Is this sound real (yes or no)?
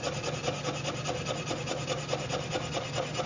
yes